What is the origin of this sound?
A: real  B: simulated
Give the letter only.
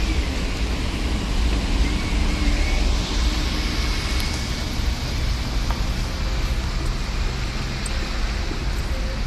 A